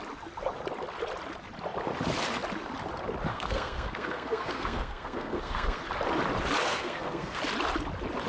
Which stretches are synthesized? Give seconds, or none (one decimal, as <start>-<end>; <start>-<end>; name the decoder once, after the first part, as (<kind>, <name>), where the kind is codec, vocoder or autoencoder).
3.3-5.8 (codec, SNAC); 6.6-7.4